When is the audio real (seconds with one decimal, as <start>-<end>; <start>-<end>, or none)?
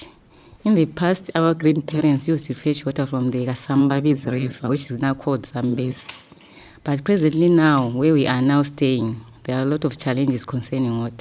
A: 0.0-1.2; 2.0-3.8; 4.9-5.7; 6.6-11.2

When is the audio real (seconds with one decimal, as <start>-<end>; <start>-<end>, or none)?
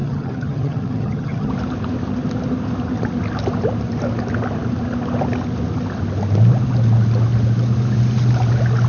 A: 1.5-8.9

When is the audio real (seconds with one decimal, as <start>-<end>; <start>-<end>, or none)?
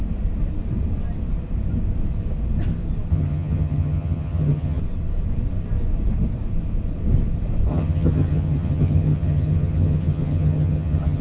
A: 0.0-3.1; 4.8-7.7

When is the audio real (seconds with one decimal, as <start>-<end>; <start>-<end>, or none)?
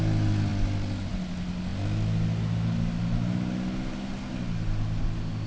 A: 0.0-5.5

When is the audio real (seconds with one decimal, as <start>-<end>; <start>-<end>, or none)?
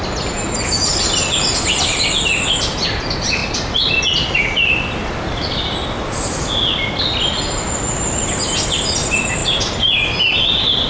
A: 0.0-10.9